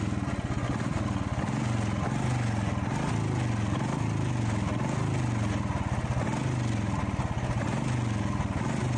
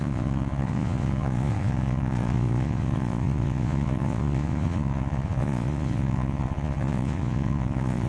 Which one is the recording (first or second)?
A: first